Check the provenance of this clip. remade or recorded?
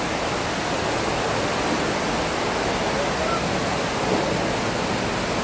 recorded